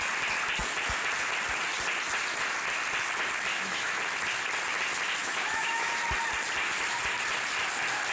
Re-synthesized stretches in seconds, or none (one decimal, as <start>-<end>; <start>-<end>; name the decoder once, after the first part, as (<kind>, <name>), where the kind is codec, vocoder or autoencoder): 3.5-4.0 (autoencoder, DAC-VAE); 5.2-5.9